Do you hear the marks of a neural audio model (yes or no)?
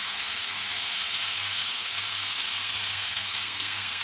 yes